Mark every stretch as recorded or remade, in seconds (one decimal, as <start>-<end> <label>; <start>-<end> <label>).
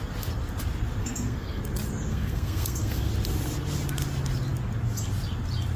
0.0-1.0 recorded; 1.0-1.6 remade; 1.6-2.1 recorded; 2.1-3.1 remade; 3.1-5.8 recorded